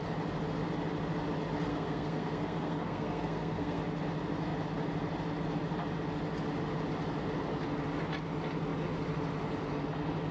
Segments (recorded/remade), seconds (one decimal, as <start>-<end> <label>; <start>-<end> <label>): 0.0-1.7 recorded; 1.7-3.8 remade; 3.8-10.3 recorded